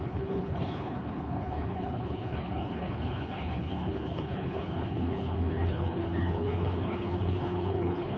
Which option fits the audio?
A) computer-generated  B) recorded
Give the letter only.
A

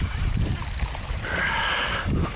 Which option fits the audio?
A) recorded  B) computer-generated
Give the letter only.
A